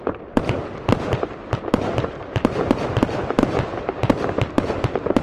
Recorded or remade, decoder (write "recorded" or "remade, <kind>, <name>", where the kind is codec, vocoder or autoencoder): recorded